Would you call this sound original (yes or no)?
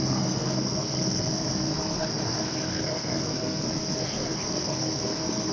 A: no